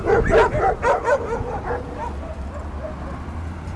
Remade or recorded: recorded